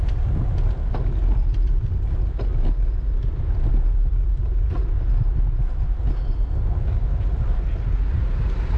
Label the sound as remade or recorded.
recorded